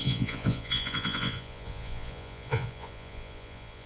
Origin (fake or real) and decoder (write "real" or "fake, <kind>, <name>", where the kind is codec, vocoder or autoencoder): fake, vocoder, Vocos